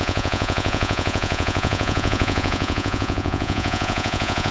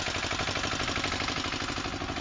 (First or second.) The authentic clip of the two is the second